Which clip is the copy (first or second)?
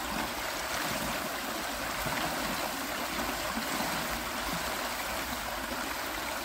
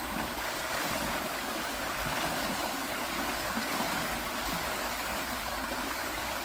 second